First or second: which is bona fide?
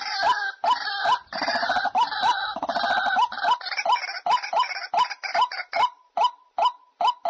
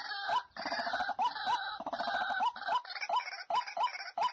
second